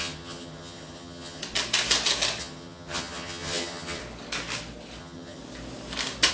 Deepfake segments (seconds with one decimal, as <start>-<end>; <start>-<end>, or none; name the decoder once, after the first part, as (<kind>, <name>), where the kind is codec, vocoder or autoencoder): 0.0-1.4 (vocoder, HiFi-GAN); 2.4-4.0; 5.0-5.4